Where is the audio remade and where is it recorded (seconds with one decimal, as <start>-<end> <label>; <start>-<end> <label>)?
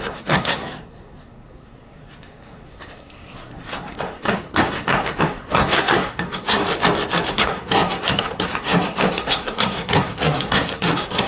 0.0-6.6 remade; 6.6-7.3 recorded; 7.3-11.3 remade